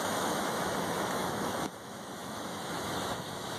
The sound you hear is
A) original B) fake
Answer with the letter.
B